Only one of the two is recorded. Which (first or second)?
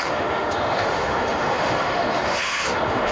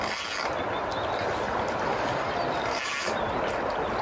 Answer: second